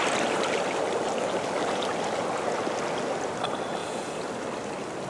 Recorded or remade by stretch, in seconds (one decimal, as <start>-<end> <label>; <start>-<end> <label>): 0.0-3.8 recorded; 3.8-4.3 remade; 4.3-5.1 recorded